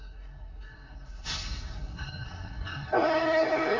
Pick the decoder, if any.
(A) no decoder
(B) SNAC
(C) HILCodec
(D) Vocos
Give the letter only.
B